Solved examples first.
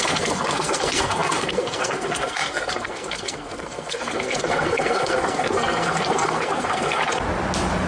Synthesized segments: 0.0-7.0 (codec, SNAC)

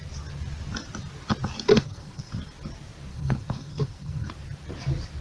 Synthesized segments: 1.7-2.3 (codec, SNAC); 3.1-4.3

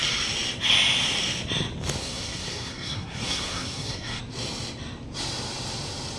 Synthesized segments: 2.0-4.2 (codec, SNAC)

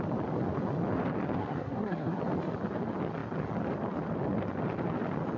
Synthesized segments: 1.4-2.2 (codec, SNAC)

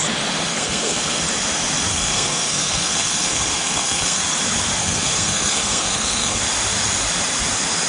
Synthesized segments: 0.5-1.2 (codec, SNAC); 1.9-4.2; 4.8-6.4